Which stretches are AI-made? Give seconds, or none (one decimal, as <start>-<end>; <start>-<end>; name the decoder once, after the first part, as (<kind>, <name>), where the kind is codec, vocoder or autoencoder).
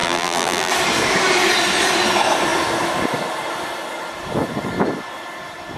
0.0-0.7 (vocoder, BigVGAN v2)